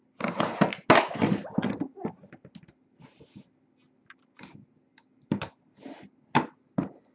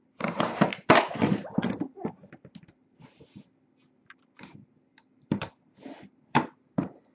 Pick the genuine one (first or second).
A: first